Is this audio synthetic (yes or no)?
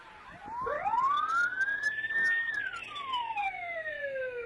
no